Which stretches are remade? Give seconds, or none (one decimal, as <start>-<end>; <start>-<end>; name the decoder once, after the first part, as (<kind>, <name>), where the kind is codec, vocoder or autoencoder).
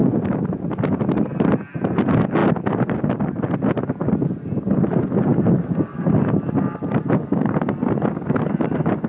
none